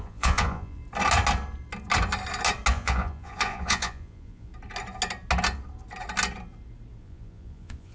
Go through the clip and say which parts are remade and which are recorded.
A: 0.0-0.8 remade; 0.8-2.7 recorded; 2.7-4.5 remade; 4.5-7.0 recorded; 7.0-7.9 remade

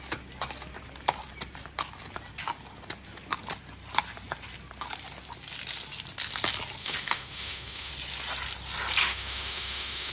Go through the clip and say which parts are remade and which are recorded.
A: 0.0-6.8 recorded; 6.8-7.9 remade; 7.9-9.0 recorded; 9.0-10.1 remade

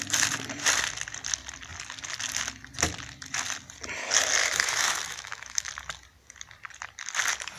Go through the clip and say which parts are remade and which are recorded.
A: 0.0-4.4 recorded; 4.4-5.7 remade; 5.7-7.6 recorded

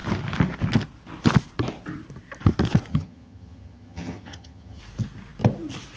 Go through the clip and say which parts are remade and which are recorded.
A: 0.0-2.9 recorded; 2.9-4.8 remade; 4.8-6.0 recorded